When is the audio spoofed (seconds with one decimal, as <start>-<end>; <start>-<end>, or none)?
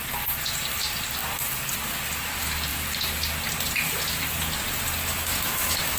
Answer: 5.1-6.0